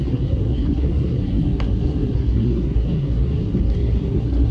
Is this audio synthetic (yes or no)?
yes